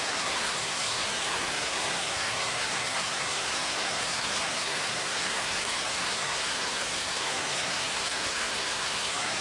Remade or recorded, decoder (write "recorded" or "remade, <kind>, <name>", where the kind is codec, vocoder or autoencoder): remade, codec, SNAC